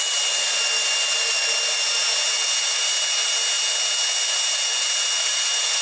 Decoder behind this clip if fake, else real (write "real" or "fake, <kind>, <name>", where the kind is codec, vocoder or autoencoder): real